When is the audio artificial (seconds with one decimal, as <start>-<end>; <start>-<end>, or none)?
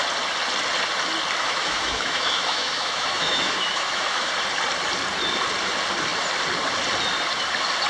1.4-4.3